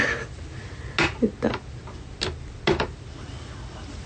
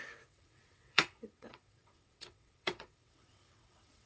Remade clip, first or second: second